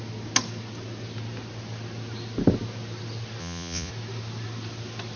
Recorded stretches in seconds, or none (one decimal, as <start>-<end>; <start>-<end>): 0.0-3.4; 3.9-5.2